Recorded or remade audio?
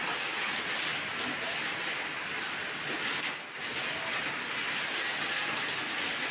recorded